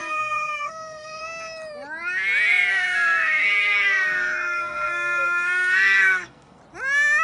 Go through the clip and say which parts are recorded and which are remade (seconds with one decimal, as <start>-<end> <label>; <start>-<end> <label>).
0.0-1.2 remade; 1.2-2.7 recorded; 2.7-6.6 remade; 6.6-7.2 recorded